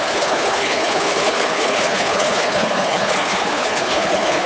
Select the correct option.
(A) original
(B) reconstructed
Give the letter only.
B